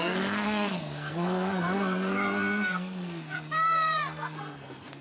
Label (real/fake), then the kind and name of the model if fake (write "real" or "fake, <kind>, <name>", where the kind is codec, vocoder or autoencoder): fake, codec, SNAC